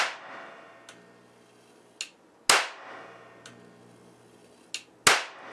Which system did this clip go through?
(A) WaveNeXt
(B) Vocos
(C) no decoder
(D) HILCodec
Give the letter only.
C